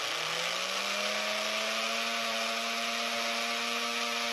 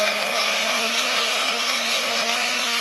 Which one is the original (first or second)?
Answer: first